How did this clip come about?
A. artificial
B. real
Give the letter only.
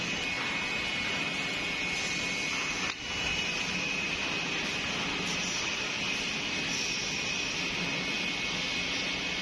B